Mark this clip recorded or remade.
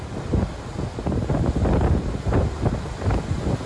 recorded